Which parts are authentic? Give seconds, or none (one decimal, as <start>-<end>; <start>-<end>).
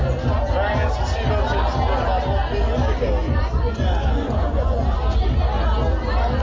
0.0-3.2; 5.0-6.4